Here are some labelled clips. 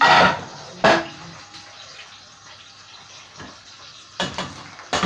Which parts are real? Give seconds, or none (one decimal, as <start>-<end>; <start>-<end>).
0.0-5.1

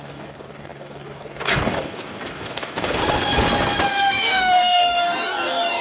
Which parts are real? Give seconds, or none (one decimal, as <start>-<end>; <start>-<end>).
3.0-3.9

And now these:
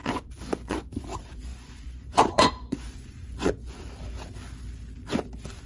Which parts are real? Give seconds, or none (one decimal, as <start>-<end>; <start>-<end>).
0.9-1.5; 3.8-5.7